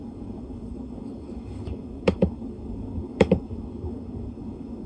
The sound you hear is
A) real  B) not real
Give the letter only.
B